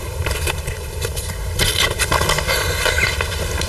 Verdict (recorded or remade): remade